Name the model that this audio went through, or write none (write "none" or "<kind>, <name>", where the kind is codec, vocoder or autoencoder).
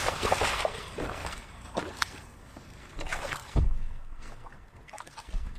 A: codec, SNAC